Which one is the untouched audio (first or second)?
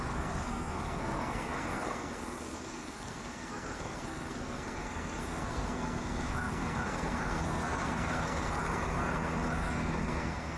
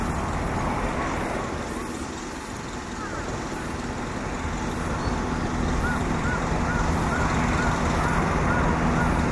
second